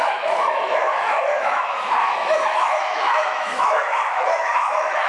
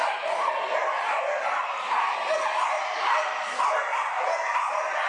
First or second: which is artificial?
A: first